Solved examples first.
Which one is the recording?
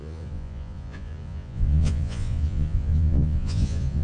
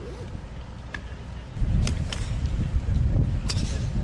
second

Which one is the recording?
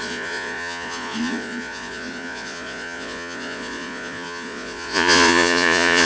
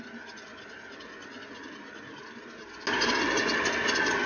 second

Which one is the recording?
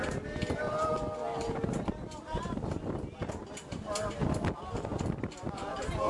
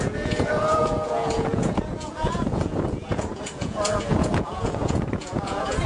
first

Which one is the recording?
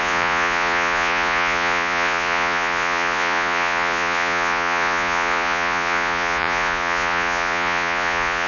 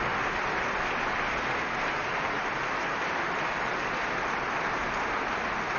second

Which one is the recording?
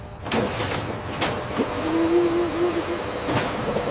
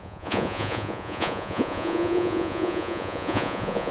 first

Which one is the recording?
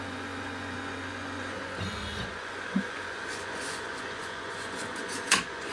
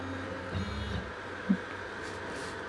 second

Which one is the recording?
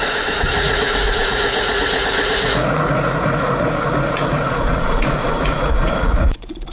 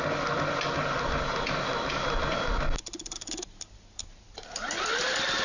second